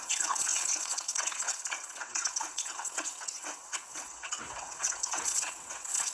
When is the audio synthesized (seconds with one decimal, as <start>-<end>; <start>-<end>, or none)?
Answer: 0.0-6.1